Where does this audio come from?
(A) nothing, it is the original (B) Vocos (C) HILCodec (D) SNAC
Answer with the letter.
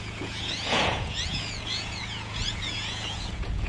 B